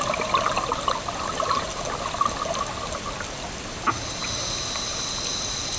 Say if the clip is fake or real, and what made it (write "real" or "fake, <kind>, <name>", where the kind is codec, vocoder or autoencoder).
real